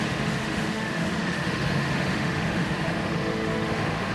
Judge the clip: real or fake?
fake